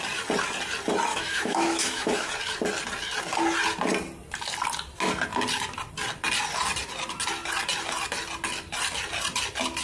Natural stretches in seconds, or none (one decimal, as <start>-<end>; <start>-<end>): 0.0-1.1; 2.3-9.8